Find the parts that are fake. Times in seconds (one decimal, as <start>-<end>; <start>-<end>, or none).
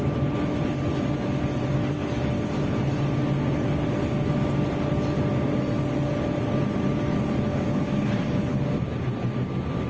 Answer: 7.5-8.1